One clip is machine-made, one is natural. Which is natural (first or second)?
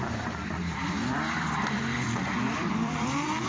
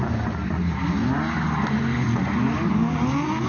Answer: second